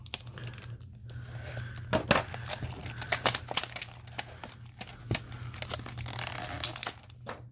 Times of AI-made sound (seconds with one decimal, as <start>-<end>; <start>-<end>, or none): none